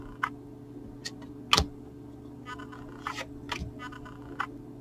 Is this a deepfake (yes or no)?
no